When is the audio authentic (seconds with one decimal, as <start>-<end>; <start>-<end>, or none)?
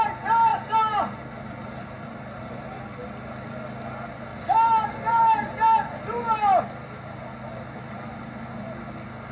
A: 0.0-9.3